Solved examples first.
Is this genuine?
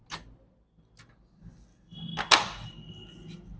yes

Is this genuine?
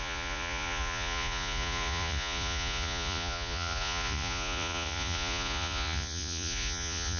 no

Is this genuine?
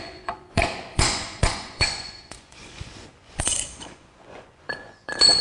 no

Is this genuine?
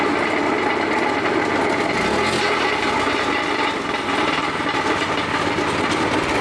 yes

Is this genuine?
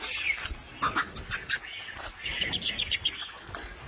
yes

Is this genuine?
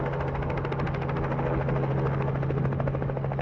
yes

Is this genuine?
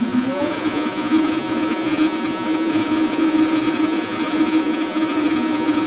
no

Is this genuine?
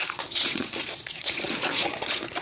no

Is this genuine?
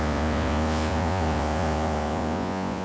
no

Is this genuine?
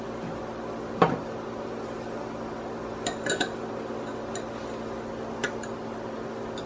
yes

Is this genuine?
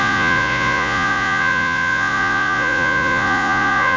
no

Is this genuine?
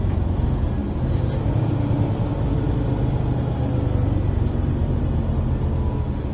yes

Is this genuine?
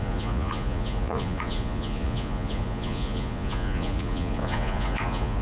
no